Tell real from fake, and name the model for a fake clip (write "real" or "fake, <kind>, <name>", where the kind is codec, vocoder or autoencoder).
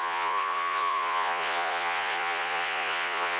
fake, vocoder, Vocos